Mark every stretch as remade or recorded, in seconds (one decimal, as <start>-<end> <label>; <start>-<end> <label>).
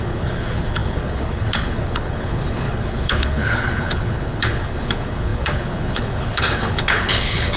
0.0-7.6 remade